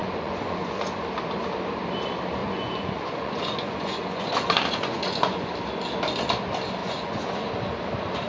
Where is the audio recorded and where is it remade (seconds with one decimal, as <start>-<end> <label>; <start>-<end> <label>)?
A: 0.0-1.0 remade; 1.0-2.4 recorded; 2.4-5.5 remade; 5.5-6.8 recorded; 6.8-7.5 remade; 7.5-8.3 recorded